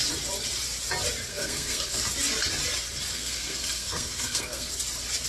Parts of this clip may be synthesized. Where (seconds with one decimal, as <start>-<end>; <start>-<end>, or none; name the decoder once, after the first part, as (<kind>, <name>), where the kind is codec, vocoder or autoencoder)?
1.3-2.0 (codec, SNAC); 3.1-4.7